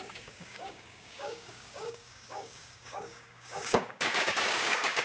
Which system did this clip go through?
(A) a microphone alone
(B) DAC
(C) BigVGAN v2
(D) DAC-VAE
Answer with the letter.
B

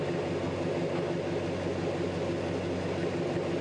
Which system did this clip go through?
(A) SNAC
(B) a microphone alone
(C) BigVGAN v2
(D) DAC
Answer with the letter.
B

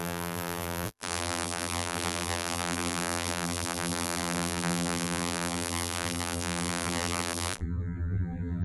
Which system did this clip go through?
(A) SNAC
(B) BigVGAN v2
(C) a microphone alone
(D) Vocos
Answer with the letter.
B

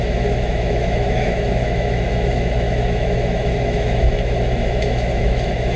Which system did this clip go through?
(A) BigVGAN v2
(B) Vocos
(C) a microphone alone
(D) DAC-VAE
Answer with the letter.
D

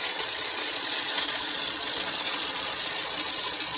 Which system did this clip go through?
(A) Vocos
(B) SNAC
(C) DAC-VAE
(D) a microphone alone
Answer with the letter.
A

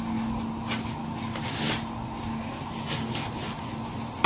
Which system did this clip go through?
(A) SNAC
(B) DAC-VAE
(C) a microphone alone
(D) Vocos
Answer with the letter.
C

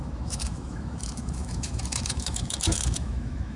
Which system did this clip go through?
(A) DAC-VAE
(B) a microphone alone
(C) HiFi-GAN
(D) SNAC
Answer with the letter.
A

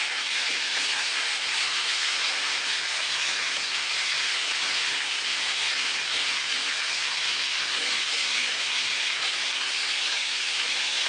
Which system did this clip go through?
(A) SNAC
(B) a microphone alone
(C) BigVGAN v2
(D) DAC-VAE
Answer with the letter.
A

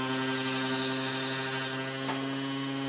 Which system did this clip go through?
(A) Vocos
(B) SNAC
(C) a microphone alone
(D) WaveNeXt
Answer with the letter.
C